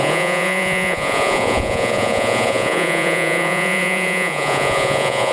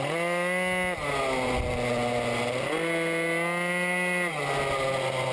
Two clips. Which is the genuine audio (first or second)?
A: second